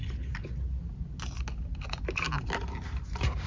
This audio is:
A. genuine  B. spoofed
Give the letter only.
A